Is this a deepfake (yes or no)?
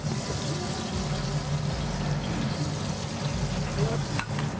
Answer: no